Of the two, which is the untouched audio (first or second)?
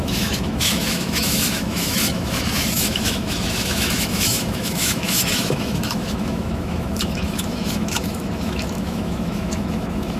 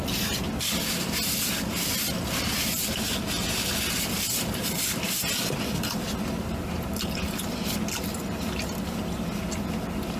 second